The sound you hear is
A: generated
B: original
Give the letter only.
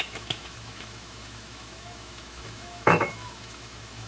A